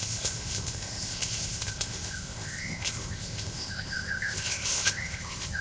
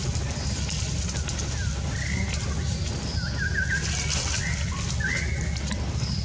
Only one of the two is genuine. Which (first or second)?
second